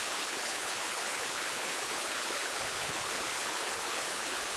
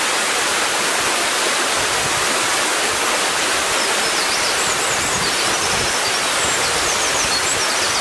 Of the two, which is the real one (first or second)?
second